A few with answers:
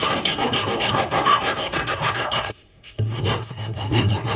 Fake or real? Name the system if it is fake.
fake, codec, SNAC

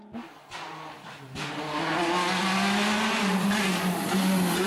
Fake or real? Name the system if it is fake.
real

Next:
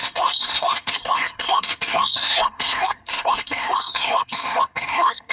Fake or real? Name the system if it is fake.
fake, codec, SNAC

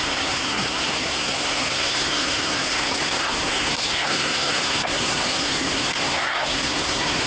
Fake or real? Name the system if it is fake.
fake, codec, SNAC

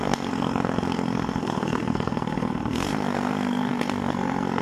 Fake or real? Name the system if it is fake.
fake, codec, SNAC